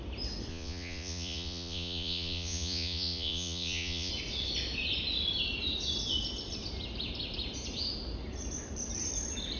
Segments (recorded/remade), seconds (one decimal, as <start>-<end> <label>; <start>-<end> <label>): 0.0-0.5 recorded; 0.5-4.1 remade; 4.1-9.6 recorded